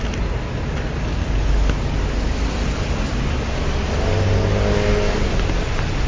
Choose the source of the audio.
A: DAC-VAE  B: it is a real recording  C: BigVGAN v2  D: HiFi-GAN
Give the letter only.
B